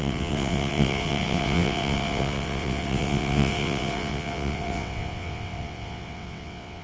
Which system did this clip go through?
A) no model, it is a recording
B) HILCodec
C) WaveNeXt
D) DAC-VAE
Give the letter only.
C